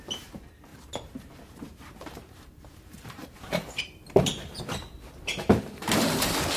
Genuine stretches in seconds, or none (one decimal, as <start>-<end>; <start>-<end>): 0.0-0.7; 4.6-6.6